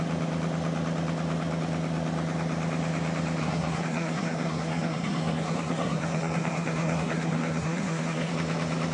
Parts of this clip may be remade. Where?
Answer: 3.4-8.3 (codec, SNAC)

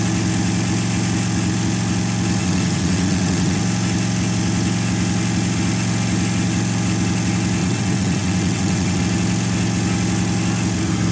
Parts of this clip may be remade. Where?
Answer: 2.4-3.6 (vocoder, WaveNeXt); 7.6-9.0

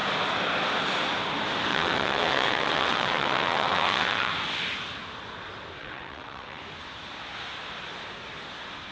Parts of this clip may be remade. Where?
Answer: 1.7-4.3 (vocoder, WaveNeXt); 5.8-6.6

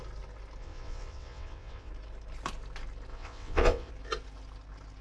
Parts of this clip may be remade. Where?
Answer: 0.6-1.9 (vocoder, WaveNeXt); 3.1-3.9